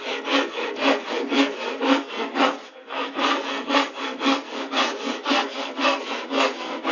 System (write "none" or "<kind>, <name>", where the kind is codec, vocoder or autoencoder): codec, SNAC